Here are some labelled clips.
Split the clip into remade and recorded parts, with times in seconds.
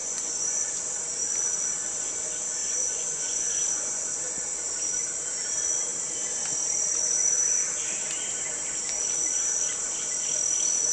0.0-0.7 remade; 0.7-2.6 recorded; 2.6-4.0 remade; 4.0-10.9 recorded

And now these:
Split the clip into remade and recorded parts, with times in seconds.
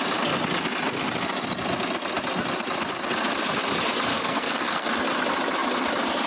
0.0-4.1 recorded; 4.1-4.9 remade; 4.9-6.3 recorded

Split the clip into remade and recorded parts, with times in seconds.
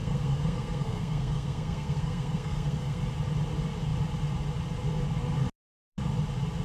0.0-3.0 remade; 3.0-6.6 recorded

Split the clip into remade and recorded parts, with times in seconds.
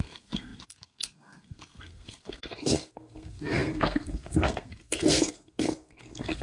0.0-6.4 remade